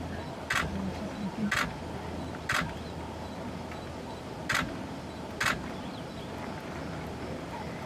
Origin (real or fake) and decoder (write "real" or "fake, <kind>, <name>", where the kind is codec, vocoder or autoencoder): real